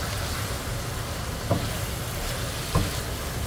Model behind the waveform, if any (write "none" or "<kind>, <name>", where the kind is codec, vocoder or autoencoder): none